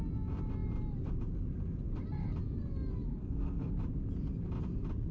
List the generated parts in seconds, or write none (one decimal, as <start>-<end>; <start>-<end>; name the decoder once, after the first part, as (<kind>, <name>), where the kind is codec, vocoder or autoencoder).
3.1-3.7 (codec, SNAC)